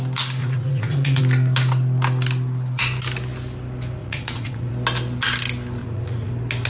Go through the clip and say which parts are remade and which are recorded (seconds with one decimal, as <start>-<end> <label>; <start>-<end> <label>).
0.0-0.4 recorded; 0.4-1.2 remade; 1.2-4.0 recorded; 4.0-4.7 remade; 4.7-5.8 recorded; 5.8-6.3 remade; 6.3-6.7 recorded